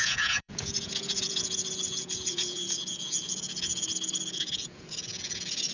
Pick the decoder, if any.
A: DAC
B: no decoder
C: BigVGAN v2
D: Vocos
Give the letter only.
D